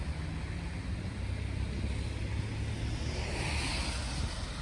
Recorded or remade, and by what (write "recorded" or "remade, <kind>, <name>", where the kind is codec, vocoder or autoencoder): recorded